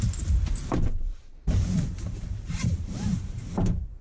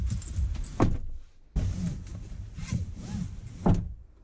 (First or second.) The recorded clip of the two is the second